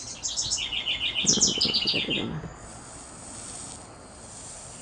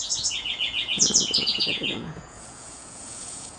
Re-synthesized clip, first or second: second